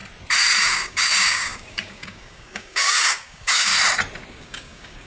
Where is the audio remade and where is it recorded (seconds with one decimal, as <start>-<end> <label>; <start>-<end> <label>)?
0.0-0.6 recorded; 0.6-3.7 remade; 3.7-4.3 recorded; 4.3-5.1 remade